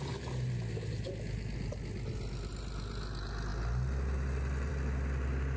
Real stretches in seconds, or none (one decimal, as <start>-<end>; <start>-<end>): 0.0-5.6